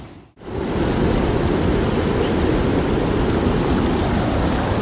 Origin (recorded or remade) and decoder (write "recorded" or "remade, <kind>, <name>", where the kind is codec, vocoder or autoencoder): recorded